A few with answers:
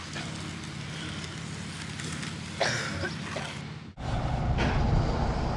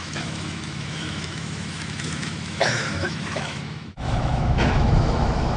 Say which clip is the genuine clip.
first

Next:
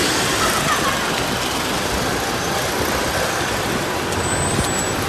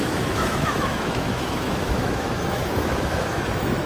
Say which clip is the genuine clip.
first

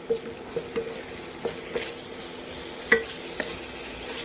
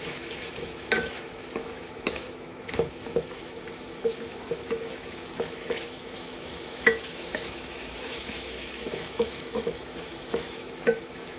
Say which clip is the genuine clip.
first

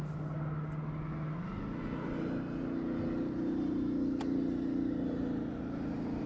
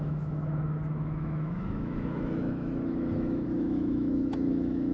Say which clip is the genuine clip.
first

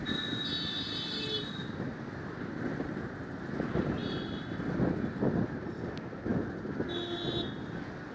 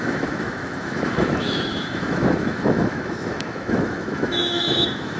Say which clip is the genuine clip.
first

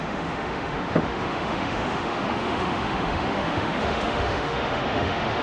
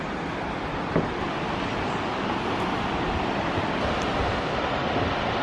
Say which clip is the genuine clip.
second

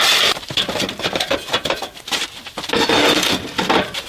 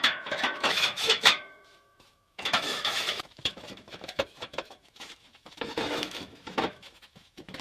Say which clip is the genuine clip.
first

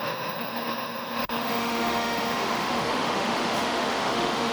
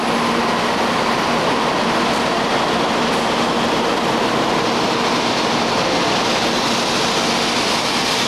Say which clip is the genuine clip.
second